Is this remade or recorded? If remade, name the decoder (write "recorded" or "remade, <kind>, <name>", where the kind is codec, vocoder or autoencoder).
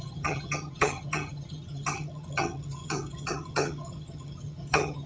remade, vocoder, HiFi-GAN